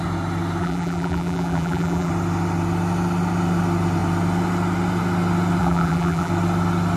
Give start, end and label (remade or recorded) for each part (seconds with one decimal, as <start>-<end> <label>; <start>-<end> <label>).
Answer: 0.0-0.6 recorded; 0.6-2.1 remade; 2.1-5.6 recorded; 5.6-6.3 remade; 6.3-7.0 recorded